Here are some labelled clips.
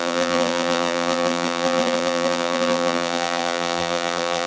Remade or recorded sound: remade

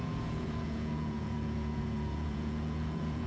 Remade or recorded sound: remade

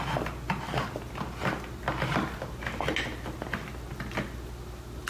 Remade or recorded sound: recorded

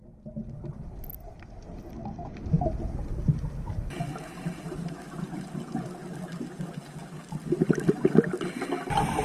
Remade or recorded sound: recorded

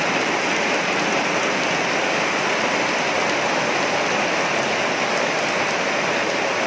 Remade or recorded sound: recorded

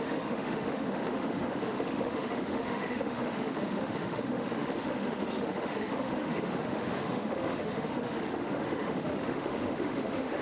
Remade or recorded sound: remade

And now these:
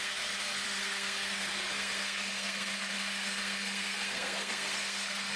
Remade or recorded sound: remade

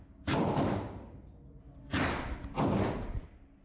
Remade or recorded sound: recorded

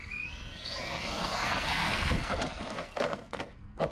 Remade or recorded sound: remade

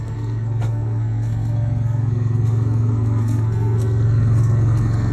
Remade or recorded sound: remade